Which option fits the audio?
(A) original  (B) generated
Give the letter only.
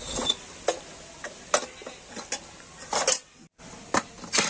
A